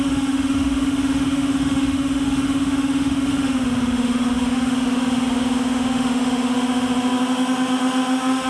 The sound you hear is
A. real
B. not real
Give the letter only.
B